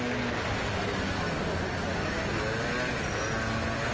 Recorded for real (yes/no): yes